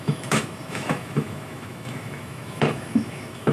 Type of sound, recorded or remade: remade